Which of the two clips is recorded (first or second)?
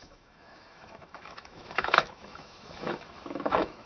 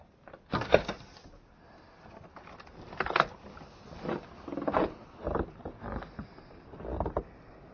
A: second